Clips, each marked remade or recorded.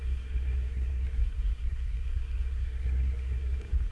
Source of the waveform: remade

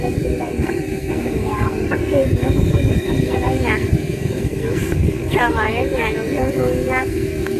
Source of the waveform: remade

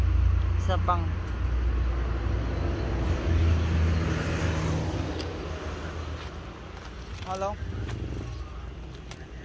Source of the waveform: recorded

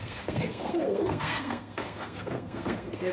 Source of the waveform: remade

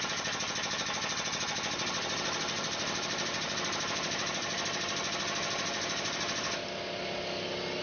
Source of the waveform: recorded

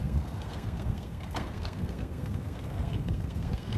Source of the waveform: remade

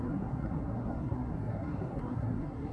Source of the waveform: remade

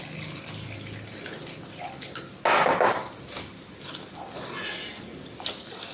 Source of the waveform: recorded